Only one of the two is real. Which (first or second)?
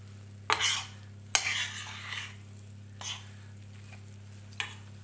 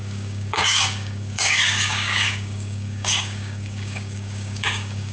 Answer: first